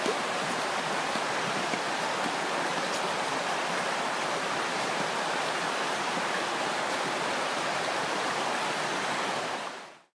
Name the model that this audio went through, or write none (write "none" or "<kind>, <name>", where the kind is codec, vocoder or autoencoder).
vocoder, BigVGAN v2